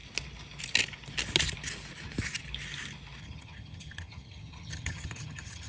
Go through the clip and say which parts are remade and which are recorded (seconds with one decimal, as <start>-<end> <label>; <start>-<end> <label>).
0.0-3.2 recorded; 3.2-5.7 remade